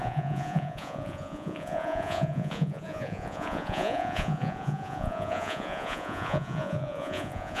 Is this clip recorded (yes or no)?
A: no